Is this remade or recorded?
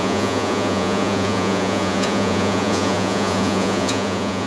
remade